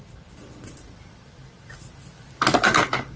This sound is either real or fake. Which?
fake